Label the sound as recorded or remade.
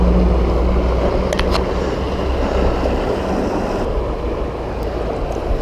recorded